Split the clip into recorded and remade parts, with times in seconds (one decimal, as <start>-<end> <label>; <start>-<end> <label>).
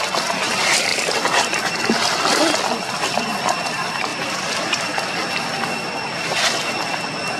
0.0-4.1 recorded; 4.1-4.8 remade; 4.8-7.4 recorded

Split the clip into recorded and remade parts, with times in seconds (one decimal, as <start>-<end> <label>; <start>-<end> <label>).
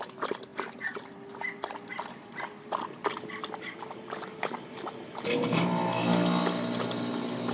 0.0-7.5 recorded